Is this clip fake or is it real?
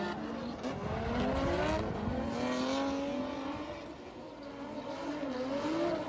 real